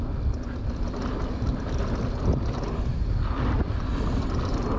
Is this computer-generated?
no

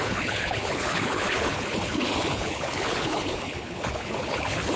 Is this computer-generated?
yes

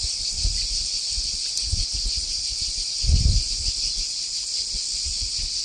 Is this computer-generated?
no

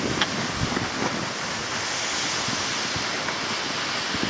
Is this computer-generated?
no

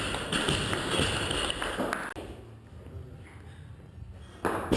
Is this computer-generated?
no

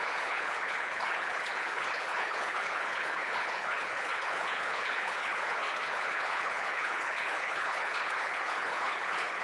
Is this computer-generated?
yes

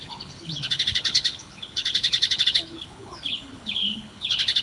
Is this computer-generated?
yes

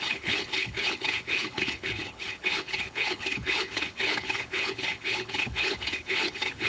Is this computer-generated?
yes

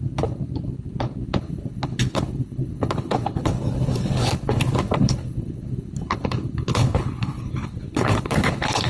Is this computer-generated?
yes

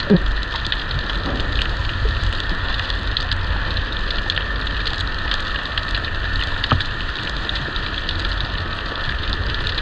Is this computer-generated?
no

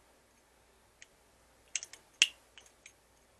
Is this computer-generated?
no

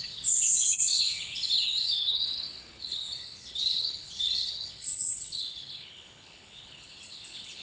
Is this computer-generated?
yes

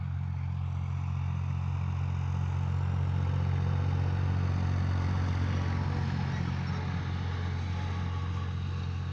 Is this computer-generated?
no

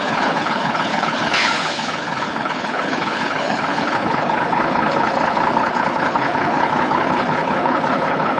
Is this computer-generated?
yes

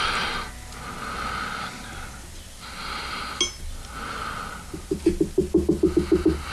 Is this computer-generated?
no